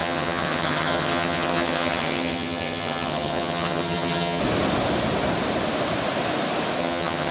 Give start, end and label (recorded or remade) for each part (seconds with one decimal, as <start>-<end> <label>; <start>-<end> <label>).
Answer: 0.0-4.4 remade; 4.4-6.8 recorded; 6.8-7.3 remade